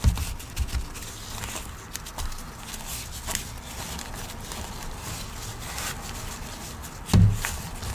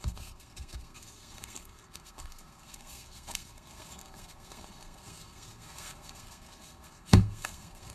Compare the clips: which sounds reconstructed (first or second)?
second